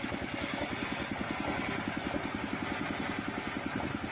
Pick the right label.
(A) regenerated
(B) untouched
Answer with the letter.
B